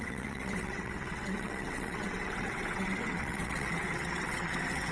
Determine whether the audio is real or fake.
fake